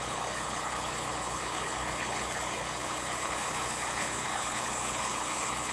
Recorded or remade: remade